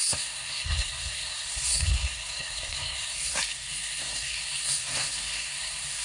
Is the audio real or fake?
fake